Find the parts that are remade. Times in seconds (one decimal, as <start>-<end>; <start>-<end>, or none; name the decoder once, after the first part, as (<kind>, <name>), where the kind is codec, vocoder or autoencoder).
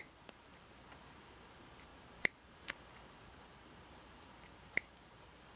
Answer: 0.5-1.5 (vocoder, BigVGAN v2); 1.9-5.6